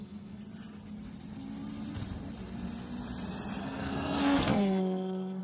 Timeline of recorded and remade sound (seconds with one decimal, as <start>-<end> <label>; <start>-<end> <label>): 0.0-0.4 remade; 0.4-3.6 recorded; 3.6-5.4 remade